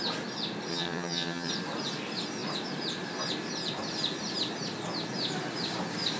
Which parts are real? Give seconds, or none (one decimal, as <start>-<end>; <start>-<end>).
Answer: 0.0-0.7; 1.5-6.2